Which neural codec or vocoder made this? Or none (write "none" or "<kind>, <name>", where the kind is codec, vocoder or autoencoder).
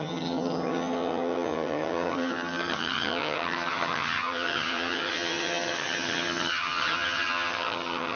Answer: vocoder, HiFi-GAN